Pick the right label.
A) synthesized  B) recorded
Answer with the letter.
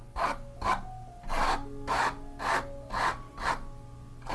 B